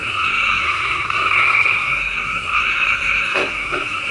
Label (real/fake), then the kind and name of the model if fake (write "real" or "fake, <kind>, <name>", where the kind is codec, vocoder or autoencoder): fake, codec, SNAC